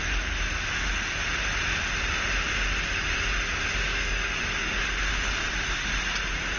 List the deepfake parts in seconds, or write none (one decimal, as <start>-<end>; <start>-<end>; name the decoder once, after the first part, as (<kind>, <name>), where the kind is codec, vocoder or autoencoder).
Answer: 3.9-4.7 (codec, DAC)